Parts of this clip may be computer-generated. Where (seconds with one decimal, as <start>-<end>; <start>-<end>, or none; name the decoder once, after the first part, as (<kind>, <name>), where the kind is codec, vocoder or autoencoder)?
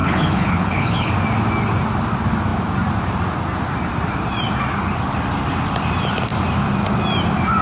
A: 0.0-1.1 (codec, HILCodec)